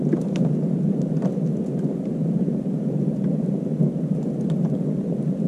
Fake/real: real